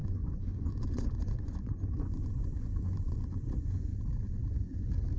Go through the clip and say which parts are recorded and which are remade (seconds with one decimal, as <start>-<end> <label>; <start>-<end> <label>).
0.0-3.9 remade; 3.9-4.5 recorded; 4.5-5.2 remade